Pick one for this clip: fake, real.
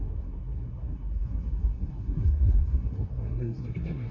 fake